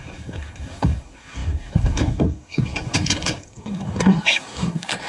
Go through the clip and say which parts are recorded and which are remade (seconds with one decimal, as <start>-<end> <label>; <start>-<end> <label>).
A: 0.0-5.1 remade